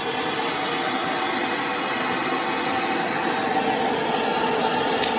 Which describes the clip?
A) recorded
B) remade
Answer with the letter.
A